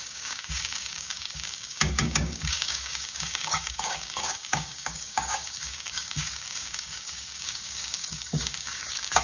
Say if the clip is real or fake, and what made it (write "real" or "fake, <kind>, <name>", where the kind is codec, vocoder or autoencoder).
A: fake, codec, DAC